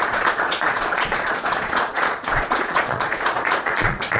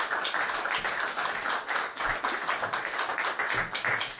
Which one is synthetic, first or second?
first